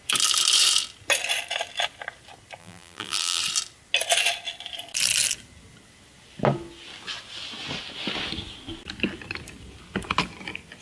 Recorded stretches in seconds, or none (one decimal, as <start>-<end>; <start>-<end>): 0.0-2.6; 3.4-10.8